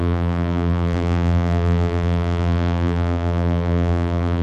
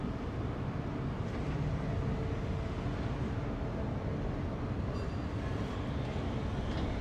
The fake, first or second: first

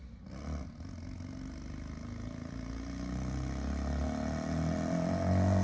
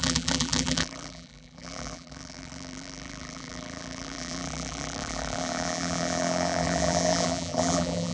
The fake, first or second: second